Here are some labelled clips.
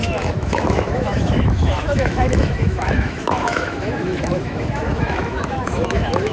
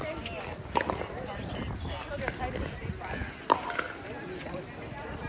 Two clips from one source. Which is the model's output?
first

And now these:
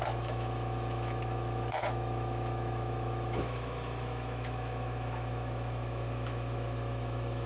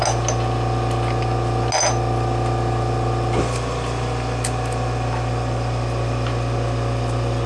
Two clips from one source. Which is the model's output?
first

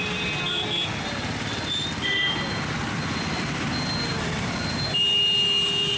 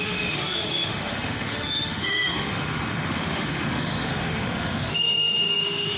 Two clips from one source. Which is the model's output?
second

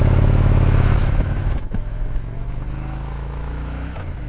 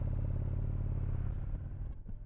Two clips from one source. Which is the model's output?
first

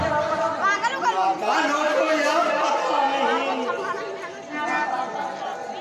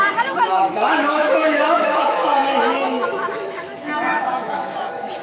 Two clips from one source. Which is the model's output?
second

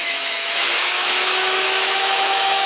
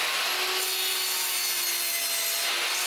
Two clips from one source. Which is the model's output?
first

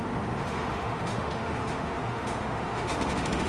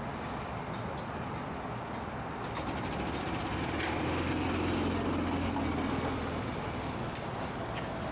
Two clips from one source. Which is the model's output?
first